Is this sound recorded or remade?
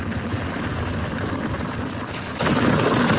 recorded